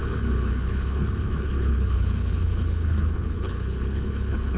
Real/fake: fake